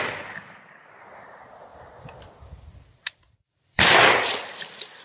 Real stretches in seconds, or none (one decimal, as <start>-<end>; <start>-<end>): 0.0-1.7